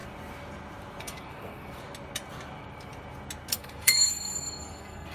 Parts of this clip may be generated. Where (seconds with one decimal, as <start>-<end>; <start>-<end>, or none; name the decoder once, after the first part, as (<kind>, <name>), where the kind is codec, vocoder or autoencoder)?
1.0-1.8 (codec, SNAC); 3.5-5.1